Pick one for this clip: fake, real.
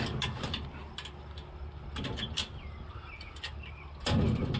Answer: real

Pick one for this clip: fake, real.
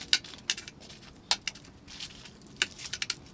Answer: real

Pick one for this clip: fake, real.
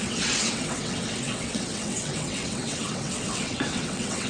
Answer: fake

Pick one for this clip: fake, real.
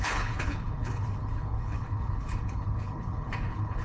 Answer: fake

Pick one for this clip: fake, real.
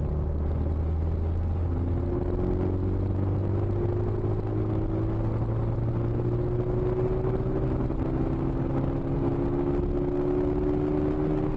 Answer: real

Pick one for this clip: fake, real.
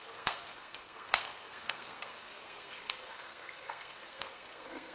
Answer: fake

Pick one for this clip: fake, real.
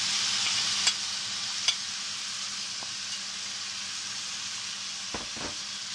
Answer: real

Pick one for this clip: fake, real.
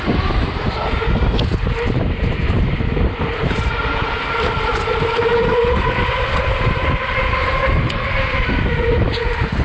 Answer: fake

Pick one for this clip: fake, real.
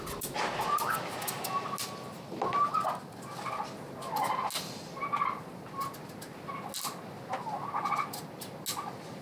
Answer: real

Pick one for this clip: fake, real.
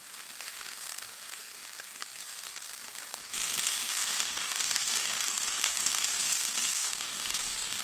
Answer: fake